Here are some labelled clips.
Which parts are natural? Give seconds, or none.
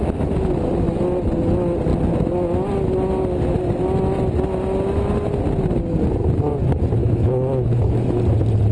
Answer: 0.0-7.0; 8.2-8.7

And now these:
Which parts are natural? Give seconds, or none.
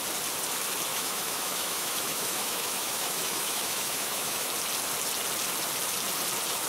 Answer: 0.0-0.9; 4.5-6.7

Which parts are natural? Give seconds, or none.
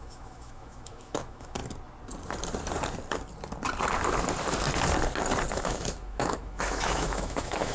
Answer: 1.6-5.5